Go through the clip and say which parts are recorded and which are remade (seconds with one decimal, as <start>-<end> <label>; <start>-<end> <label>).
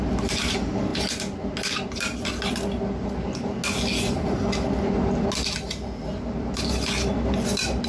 0.0-7.9 recorded